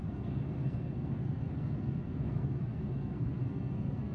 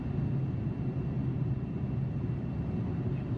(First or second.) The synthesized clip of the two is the first